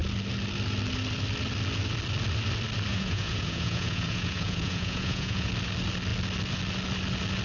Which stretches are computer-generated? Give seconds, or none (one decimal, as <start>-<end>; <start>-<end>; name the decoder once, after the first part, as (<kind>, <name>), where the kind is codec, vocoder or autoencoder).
2.9-5.5 (vocoder, Vocos)